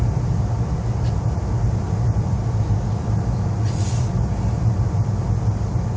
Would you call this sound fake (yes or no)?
no